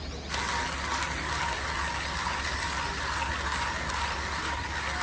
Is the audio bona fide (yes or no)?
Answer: yes